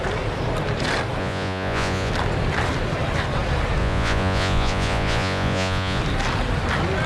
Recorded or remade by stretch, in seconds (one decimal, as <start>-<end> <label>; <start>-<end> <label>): 0.0-1.2 recorded; 1.2-2.1 remade; 2.1-3.8 recorded; 3.8-6.0 remade; 6.0-7.1 recorded